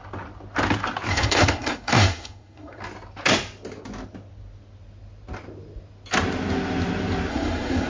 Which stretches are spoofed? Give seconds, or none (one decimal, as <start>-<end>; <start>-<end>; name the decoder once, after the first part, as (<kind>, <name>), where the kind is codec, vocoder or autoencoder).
1.1-2.8 (codec, SNAC); 7.3-7.9